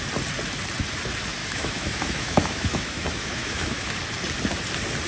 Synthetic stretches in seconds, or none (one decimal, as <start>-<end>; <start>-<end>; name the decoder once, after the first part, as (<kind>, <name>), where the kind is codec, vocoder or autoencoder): 1.4-4.0 (autoencoder, DAC-VAE)